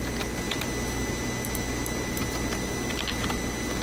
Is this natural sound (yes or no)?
yes